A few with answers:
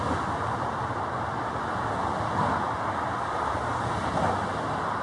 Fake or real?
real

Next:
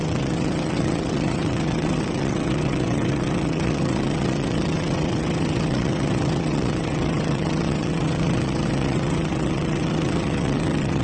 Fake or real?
fake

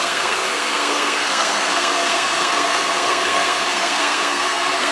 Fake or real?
fake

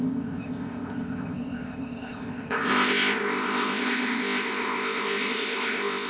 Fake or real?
fake